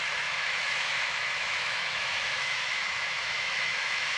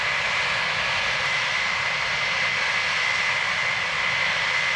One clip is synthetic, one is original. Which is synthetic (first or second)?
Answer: first